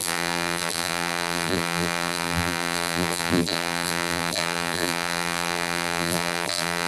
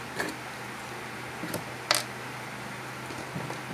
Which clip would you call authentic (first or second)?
second